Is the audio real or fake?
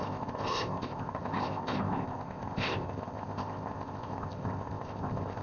fake